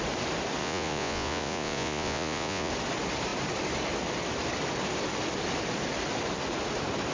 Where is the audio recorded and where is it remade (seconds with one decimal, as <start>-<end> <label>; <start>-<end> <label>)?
0.0-0.6 recorded; 0.6-2.7 remade; 2.7-7.1 recorded